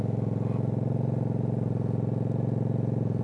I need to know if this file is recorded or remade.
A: recorded